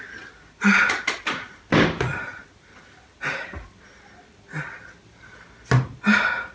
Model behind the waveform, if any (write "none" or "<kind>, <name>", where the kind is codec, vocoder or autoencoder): none